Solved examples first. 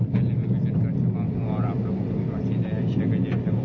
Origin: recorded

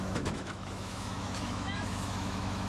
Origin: remade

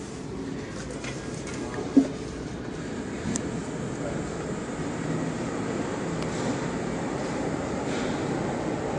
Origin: recorded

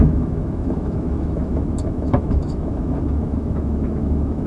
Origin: remade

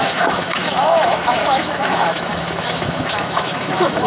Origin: remade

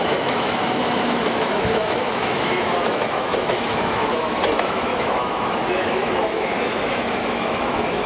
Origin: remade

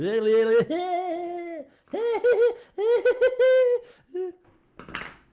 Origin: recorded